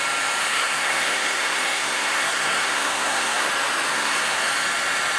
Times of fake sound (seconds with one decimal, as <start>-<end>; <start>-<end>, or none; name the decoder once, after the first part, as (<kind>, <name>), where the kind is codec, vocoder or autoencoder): 0.4-3.5 (codec, SNAC); 3.9-4.4